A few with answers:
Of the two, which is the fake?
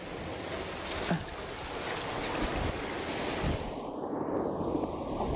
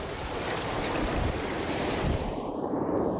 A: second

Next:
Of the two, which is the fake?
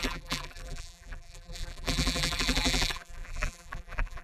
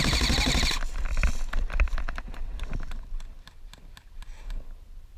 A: first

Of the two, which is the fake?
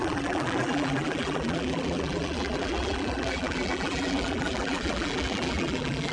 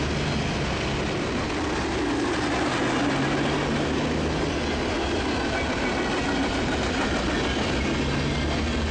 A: first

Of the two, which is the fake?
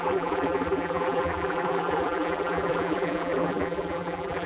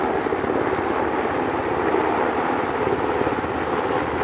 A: first